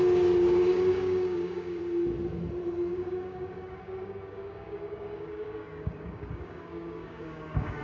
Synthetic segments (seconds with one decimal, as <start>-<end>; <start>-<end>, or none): 0.4-1.8; 2.9-7.8